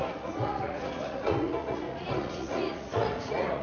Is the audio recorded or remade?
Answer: remade